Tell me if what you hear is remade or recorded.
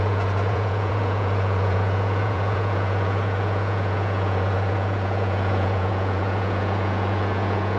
remade